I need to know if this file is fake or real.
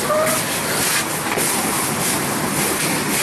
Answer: real